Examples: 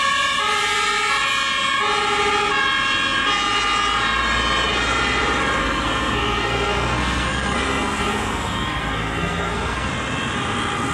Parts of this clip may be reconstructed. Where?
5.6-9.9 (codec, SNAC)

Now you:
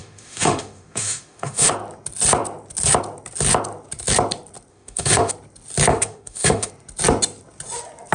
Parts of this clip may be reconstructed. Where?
0.0-1.7 (autoencoder, DAC-VAE); 4.7-5.3; 5.9-6.7

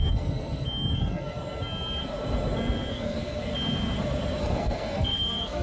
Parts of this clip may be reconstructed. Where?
0.0-1.4 (codec, SNAC); 2.9-3.5; 4.4-5.6

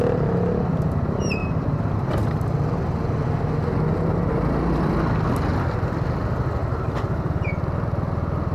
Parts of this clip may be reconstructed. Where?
6.6-7.3 (vocoder, BigVGAN v2)